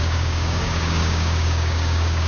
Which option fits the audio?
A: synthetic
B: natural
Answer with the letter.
A